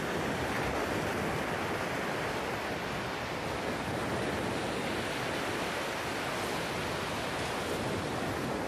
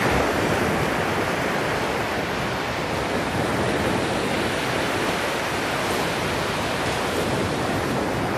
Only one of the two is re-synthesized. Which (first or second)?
second